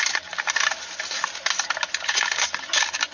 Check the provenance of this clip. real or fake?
real